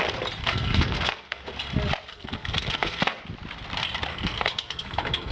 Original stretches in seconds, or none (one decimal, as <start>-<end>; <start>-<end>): 0.0-0.4; 1.4-2.1; 3.2-4.1